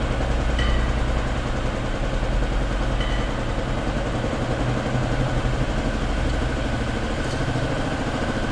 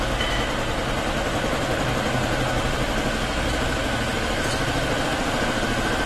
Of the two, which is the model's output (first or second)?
second